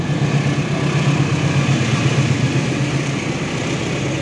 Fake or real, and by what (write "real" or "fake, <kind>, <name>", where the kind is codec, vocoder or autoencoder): real